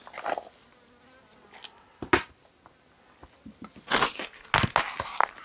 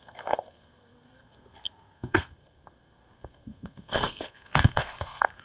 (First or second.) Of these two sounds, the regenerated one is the second